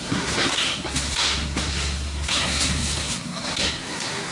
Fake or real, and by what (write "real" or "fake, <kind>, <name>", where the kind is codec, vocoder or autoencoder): fake, codec, SNAC